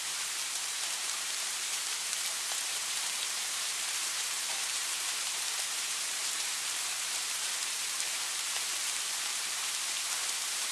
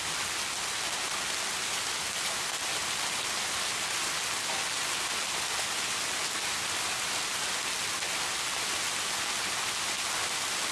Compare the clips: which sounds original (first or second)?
second